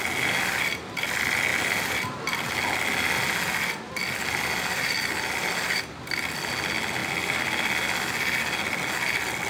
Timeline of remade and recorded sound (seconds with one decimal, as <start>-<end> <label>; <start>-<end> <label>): 0.0-9.5 recorded